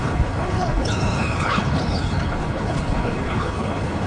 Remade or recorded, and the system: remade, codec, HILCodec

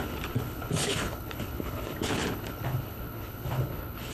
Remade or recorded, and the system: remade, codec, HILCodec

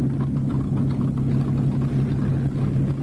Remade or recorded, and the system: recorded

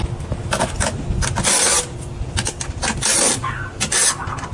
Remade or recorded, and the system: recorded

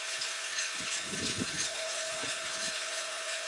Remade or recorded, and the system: remade, codec, HILCodec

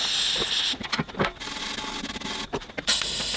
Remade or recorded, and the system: recorded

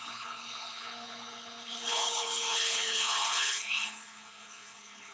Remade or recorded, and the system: remade, codec, HILCodec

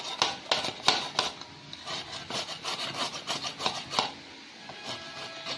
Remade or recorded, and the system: recorded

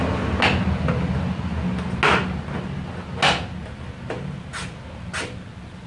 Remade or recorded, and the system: recorded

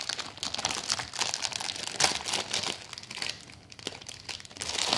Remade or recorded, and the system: recorded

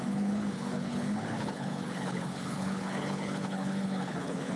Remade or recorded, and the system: remade, codec, HILCodec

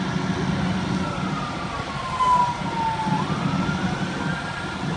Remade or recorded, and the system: recorded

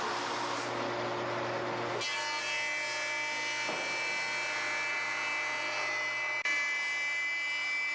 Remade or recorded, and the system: recorded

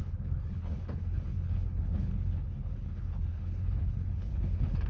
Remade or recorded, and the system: remade, codec, HILCodec